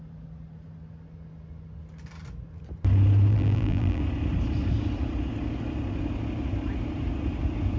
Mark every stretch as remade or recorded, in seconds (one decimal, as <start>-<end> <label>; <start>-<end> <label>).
0.0-3.3 recorded; 3.3-4.0 remade; 4.0-7.8 recorded